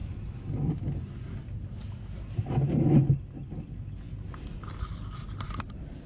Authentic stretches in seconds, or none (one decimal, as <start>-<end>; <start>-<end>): 0.0-6.1